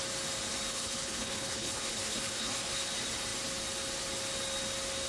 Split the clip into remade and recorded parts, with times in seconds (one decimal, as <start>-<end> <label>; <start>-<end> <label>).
0.0-0.7 recorded; 0.7-2.9 remade; 2.9-5.1 recorded